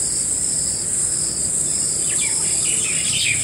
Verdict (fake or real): real